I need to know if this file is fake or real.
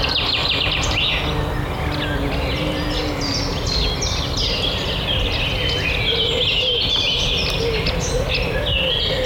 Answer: real